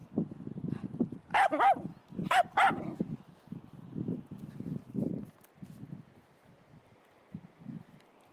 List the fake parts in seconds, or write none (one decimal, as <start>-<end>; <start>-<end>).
none